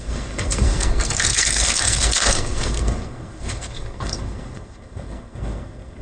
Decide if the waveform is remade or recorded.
remade